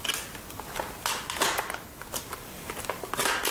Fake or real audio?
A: real